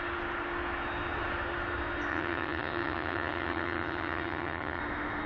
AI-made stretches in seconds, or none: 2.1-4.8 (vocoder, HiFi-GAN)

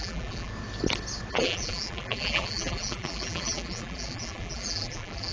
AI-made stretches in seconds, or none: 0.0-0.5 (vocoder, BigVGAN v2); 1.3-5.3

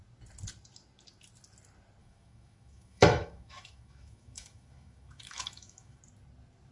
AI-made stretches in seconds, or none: 2.0-6.0 (autoencoder, DAC-VAE)

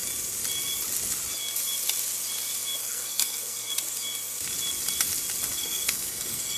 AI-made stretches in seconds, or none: 2.8-3.7 (codec, SNAC); 5.5-6.6

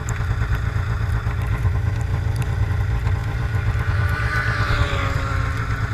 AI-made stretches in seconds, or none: 2.1-2.8 (vocoder, BigVGAN v2); 3.2-5.4

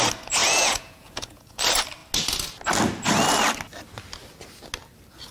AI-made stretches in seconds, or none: 0.4-1.6 (vocoder, Vocos)